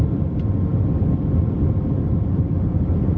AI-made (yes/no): no